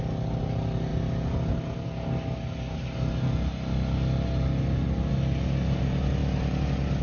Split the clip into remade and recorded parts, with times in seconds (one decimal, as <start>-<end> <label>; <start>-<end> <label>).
0.0-7.0 recorded